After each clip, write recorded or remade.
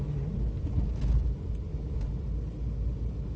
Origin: recorded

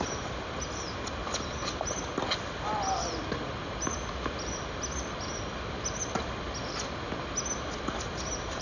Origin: recorded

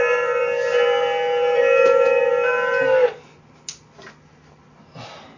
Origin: recorded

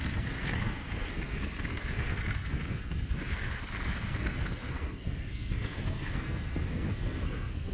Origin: remade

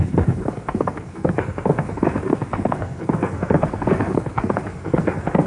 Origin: remade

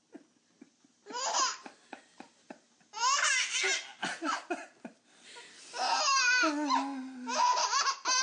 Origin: recorded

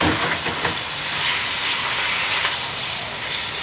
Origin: recorded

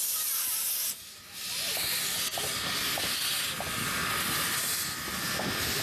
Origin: recorded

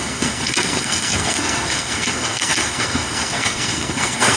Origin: remade